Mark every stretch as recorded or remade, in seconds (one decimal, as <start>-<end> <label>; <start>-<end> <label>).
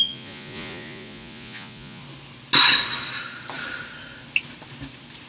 0.0-2.0 remade; 2.0-5.3 recorded